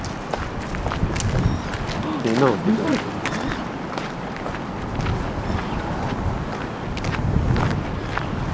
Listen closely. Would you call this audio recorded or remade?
recorded